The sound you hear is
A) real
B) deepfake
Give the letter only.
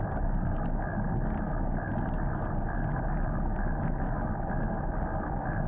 A